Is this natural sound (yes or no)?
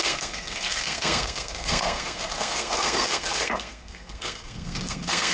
no